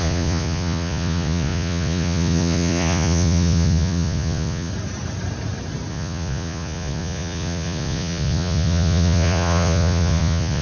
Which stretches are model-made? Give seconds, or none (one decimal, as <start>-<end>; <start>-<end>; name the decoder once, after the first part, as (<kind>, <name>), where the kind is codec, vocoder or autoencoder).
0.0-4.7 (vocoder, Vocos); 5.9-10.6